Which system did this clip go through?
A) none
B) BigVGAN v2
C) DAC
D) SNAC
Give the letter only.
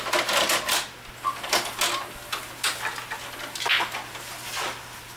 A